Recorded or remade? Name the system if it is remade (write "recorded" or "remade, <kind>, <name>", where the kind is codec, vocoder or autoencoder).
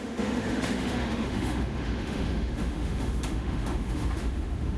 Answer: remade, autoencoder, DAC-VAE